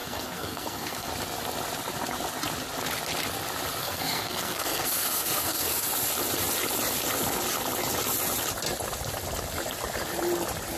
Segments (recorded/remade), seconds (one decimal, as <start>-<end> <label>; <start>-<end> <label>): 0.0-1.1 remade; 1.1-3.8 recorded; 3.8-5.9 remade; 5.9-10.8 recorded